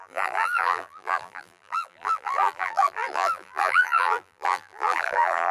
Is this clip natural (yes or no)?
no